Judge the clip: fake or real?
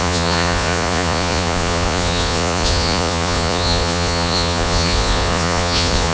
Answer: fake